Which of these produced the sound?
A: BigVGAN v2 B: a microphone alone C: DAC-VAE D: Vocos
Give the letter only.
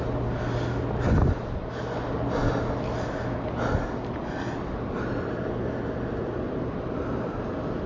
B